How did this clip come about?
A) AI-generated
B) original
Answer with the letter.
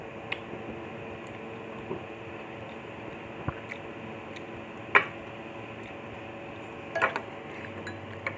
B